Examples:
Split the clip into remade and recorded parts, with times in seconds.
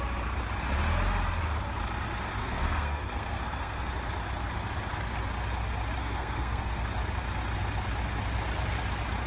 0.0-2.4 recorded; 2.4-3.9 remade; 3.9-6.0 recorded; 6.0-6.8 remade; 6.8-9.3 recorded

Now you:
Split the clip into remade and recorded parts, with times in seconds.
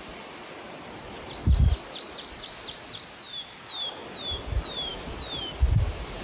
0.0-6.2 recorded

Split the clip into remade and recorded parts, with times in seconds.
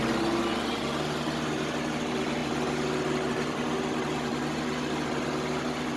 0.0-6.0 recorded